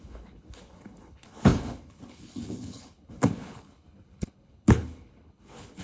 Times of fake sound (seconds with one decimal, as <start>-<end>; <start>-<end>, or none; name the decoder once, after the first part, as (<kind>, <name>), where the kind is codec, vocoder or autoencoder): 0.0-5.8 (codec, HILCodec)